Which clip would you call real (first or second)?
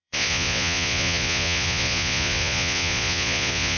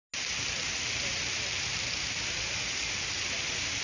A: second